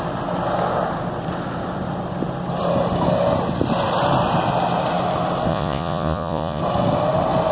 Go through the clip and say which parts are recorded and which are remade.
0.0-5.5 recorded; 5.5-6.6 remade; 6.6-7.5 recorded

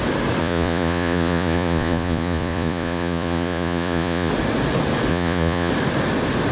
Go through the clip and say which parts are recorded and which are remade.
0.0-0.4 recorded; 0.4-4.3 remade; 4.3-5.1 recorded; 5.1-5.7 remade; 5.7-6.5 recorded

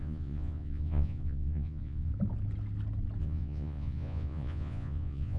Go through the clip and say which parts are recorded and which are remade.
0.0-2.1 remade; 2.1-3.2 recorded; 3.2-5.4 remade

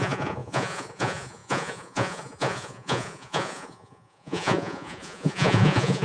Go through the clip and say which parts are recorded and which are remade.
0.0-6.0 remade

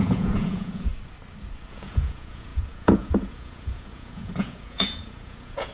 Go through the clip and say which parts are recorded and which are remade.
0.0-0.9 remade; 0.9-1.7 recorded; 1.7-5.7 remade

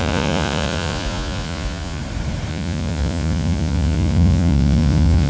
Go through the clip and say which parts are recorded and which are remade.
0.0-2.0 remade; 2.0-2.5 recorded; 2.5-5.3 remade